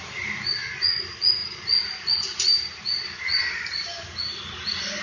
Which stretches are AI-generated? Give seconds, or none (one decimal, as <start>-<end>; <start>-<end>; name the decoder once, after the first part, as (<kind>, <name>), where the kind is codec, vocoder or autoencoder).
none